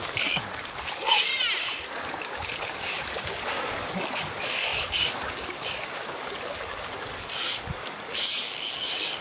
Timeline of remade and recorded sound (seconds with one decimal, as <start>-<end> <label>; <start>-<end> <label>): 0.0-1.3 remade; 1.3-2.1 recorded; 2.1-9.2 remade